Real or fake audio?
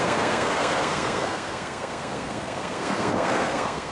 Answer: fake